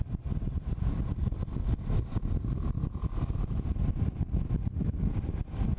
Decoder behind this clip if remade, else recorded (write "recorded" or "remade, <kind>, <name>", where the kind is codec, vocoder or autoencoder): recorded